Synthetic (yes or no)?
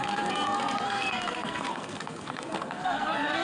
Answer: yes